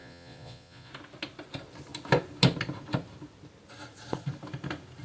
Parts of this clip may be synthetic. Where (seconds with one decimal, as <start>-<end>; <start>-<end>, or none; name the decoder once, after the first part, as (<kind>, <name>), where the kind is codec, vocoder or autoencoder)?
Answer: 0.0-0.9 (vocoder, Vocos)